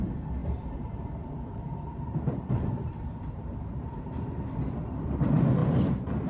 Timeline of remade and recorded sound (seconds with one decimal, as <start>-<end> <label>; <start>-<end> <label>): 0.0-0.4 recorded; 0.4-4.2 remade; 4.2-6.3 recorded